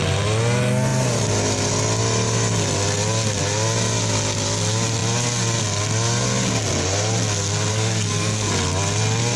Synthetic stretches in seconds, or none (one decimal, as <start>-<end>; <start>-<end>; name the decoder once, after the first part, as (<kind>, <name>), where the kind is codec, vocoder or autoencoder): 7.7-8.5 (codec, SNAC)